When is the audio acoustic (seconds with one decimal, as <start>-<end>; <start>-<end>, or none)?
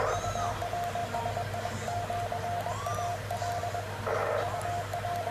0.0-5.3